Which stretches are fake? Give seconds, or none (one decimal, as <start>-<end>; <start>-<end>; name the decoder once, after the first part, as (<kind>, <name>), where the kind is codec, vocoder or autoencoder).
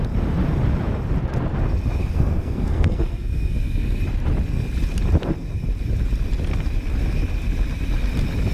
2.0-4.0 (codec, SNAC)